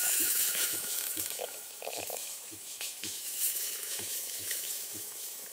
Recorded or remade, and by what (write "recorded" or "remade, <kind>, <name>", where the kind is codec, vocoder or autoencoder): remade, autoencoder, DAC-VAE